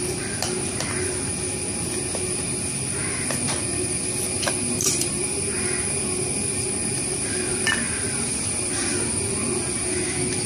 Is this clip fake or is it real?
real